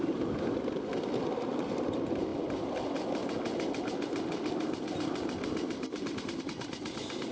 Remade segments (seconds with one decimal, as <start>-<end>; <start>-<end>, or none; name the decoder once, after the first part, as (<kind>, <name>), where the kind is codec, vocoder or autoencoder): none